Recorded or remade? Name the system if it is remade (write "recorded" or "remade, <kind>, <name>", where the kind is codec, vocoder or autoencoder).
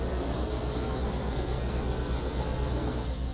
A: remade, codec, SNAC